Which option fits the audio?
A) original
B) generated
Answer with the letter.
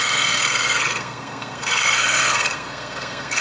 B